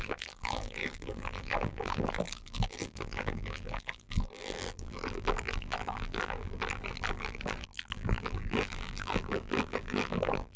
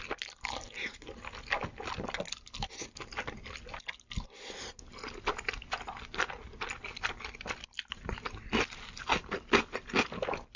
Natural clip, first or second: second